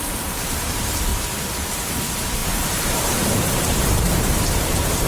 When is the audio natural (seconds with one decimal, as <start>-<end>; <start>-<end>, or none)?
1.1-1.7